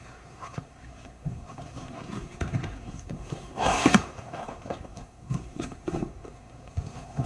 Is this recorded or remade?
remade